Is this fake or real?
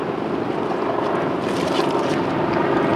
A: real